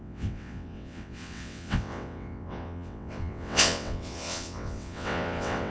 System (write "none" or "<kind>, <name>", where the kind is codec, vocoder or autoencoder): vocoder, WaveNeXt